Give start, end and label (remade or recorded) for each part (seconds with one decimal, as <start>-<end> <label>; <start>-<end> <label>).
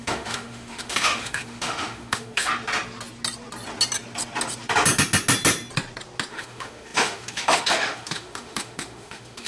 0.0-2.5 remade; 2.5-6.3 recorded; 6.3-9.5 remade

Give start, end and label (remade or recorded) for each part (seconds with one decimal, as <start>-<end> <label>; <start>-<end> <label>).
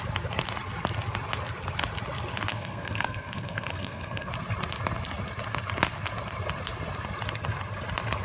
0.0-2.5 recorded; 2.5-4.3 remade; 4.3-8.2 recorded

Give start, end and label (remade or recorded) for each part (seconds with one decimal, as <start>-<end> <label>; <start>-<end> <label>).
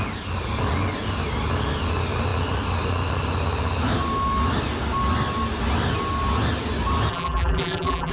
0.0-7.1 recorded; 7.1-8.1 remade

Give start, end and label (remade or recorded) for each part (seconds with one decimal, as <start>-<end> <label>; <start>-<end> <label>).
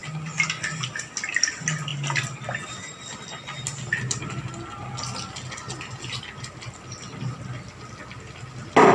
0.0-8.9 recorded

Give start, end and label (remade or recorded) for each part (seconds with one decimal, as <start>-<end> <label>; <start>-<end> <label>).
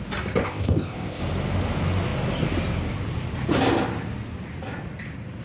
0.0-0.4 recorded; 0.4-1.2 remade; 1.2-5.4 recorded